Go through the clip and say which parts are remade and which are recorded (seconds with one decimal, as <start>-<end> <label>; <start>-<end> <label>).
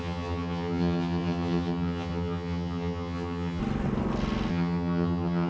0.0-3.6 remade; 3.6-4.5 recorded; 4.5-5.5 remade